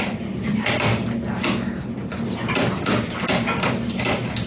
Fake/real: real